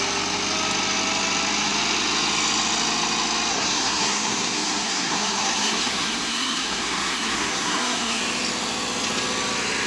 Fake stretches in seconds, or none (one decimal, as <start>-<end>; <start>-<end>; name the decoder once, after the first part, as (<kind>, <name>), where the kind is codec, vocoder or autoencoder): 3.5-8.2 (codec, SNAC)